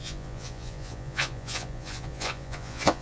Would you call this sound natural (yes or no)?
no